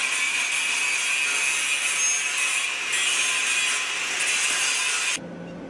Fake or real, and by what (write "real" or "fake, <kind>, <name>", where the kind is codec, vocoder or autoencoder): real